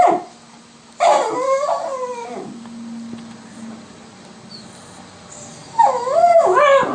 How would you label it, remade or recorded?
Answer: recorded